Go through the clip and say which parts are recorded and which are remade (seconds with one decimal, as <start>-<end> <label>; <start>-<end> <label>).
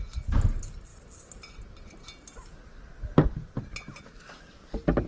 0.0-5.1 recorded